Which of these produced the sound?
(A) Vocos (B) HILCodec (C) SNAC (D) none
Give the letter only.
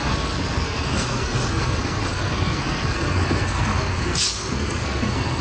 C